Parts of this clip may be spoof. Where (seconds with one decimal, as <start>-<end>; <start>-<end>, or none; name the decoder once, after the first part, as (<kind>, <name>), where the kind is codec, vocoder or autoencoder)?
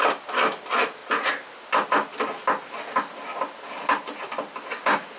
none